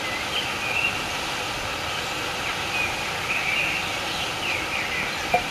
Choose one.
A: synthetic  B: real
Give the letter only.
B